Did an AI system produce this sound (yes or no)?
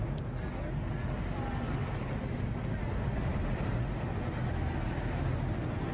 no